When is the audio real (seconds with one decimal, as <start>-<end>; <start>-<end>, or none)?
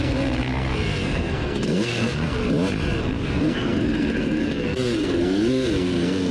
2.4-3.0